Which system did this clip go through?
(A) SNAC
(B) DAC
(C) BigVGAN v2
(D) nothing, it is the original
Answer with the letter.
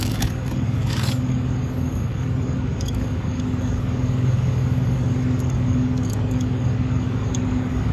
B